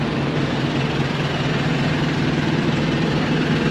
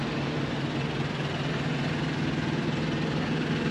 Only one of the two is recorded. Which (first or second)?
second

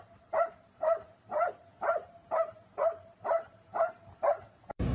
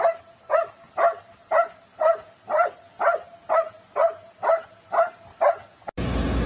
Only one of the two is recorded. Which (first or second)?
second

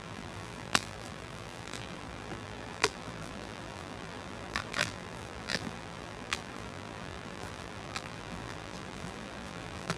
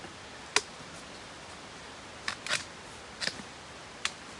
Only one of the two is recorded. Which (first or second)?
second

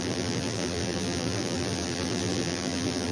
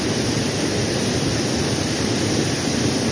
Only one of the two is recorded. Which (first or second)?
second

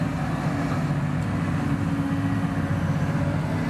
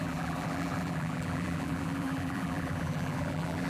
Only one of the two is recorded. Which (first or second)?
first